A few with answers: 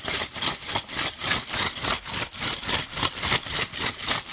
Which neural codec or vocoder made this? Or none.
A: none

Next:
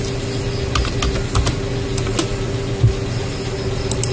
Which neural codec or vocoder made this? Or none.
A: none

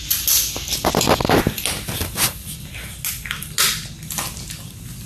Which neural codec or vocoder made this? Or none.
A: none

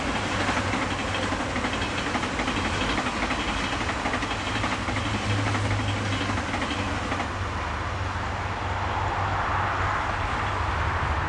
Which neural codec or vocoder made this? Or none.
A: none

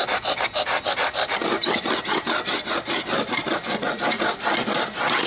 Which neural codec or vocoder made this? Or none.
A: none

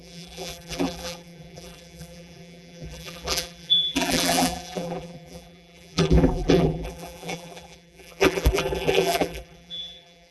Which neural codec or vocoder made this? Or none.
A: vocoder, BigVGAN v2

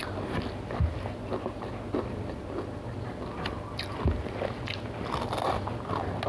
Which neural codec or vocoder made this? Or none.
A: none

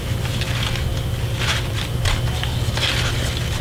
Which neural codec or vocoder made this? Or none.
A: none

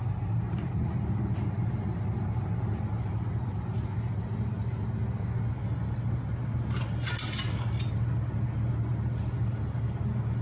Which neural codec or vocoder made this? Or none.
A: none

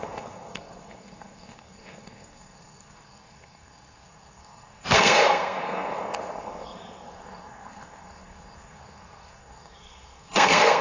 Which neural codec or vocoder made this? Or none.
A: codec, SNAC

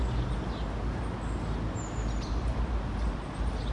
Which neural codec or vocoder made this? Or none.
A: none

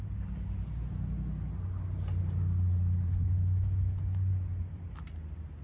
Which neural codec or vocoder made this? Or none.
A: none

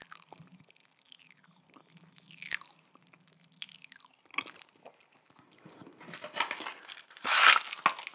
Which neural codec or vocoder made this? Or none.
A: none